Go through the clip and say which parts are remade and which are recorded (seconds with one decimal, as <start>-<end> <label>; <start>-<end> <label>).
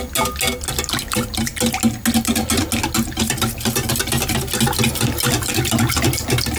0.0-6.6 recorded